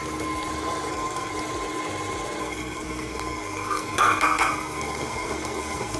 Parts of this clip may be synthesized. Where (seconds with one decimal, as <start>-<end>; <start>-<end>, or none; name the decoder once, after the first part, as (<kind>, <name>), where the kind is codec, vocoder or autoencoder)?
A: 0.9-1.3 (codec, SNAC); 2.4-6.0